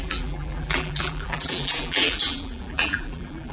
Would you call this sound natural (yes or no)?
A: no